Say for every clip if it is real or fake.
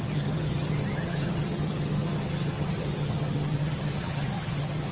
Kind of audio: fake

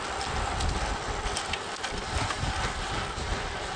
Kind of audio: real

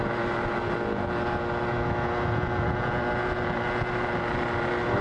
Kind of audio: real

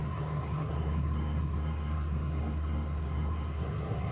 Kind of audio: fake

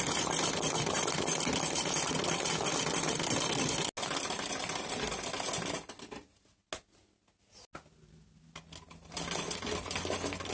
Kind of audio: real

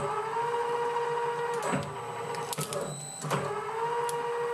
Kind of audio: real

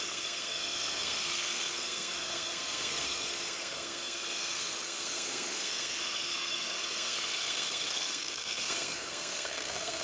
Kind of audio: fake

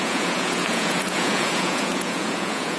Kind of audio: fake